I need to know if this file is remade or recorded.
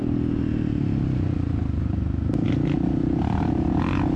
recorded